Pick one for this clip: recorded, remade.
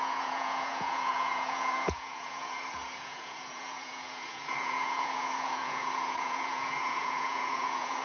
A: remade